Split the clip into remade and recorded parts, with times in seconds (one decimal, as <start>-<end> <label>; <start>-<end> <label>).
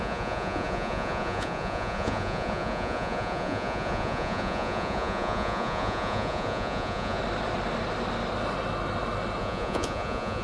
0.0-7.2 remade; 7.2-9.4 recorded; 9.4-10.4 remade